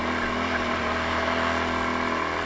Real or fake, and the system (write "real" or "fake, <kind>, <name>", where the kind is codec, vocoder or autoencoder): real